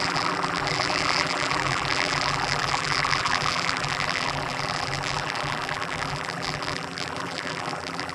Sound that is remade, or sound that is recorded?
remade